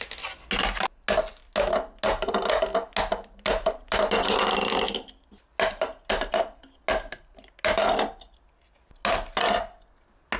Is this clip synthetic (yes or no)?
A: no